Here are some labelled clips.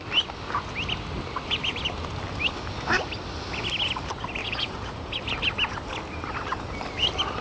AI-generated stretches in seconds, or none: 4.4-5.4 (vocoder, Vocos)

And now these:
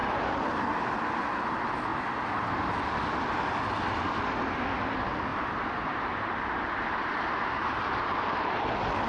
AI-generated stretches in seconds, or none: 0.0-0.6 (vocoder, BigVGAN v2); 5.3-8.6

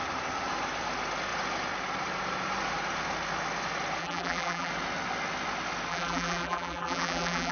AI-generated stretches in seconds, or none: 4.0-4.7 (vocoder, BigVGAN v2); 5.9-7.5

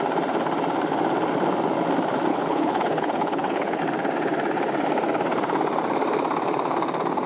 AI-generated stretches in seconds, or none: 2.3-3.8 (codec, HILCodec)

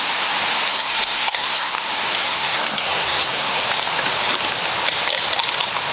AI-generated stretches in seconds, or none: 0.7-1.7 (codec, SNAC); 2.2-3.6